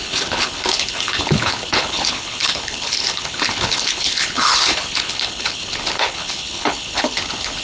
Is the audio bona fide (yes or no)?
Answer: no